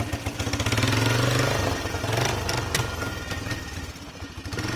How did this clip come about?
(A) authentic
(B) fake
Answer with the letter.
A